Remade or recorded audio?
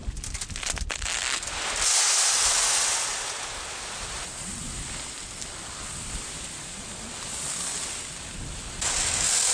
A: recorded